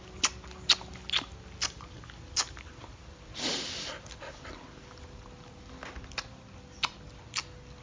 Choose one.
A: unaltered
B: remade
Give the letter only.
A